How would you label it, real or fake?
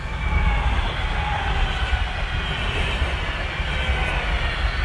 real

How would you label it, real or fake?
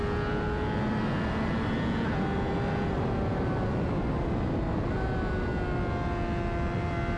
real